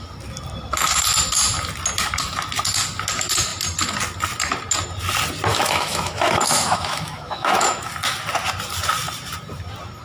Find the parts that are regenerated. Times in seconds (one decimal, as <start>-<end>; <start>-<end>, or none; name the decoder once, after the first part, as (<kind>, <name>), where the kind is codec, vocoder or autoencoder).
5.5-7.9 (autoencoder, DAC-VAE)